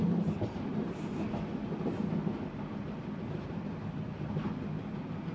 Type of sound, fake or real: real